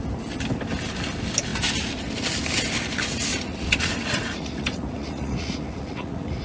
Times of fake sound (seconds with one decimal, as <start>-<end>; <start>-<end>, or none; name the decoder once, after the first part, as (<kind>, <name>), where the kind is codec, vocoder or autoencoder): 3.3-6.4 (vocoder, Vocos)